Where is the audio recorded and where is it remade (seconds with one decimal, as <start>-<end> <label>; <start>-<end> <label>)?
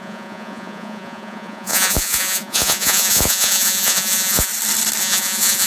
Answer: 0.0-4.5 remade; 4.5-5.0 recorded; 5.0-5.7 remade